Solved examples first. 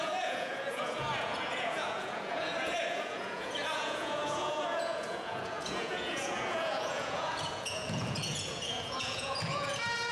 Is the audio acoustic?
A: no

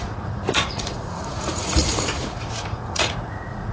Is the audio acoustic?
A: no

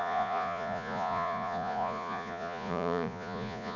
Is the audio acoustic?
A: no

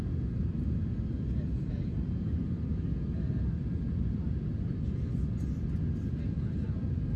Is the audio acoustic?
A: yes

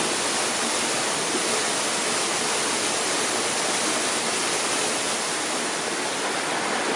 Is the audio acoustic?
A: yes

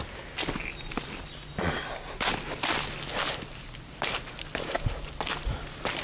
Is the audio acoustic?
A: yes